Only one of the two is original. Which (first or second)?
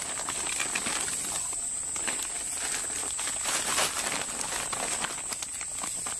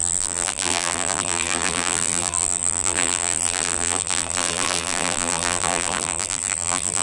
first